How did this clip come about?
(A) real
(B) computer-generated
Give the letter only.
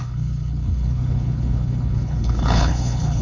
B